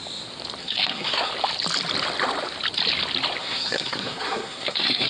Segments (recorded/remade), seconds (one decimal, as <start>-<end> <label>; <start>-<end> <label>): 0.0-0.6 recorded; 0.6-1.3 remade; 1.3-3.4 recorded; 3.4-5.1 remade